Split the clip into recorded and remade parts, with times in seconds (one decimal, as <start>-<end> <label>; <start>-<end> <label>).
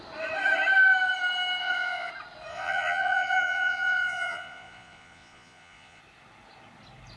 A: 0.0-1.6 recorded; 1.6-2.1 remade; 2.1-2.5 recorded; 2.5-6.0 remade; 6.0-7.2 recorded